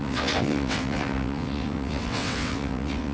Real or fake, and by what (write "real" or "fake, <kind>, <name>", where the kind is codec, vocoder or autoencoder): fake, vocoder, WaveNeXt